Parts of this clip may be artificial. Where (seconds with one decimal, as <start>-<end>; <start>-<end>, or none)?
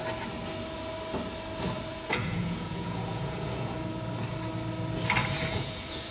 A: 1.9-3.9; 5.2-6.1